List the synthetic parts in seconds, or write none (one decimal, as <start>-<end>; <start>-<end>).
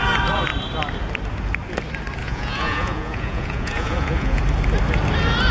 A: 2.2-4.4